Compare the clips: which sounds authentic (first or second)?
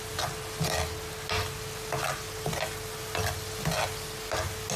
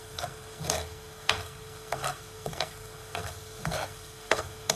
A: first